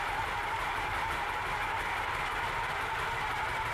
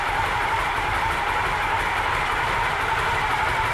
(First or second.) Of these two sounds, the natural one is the first